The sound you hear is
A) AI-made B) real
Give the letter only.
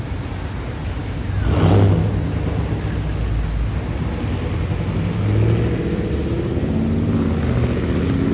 B